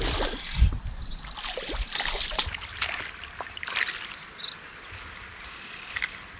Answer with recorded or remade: recorded